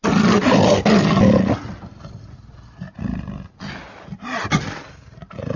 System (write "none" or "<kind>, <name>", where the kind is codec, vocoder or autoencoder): none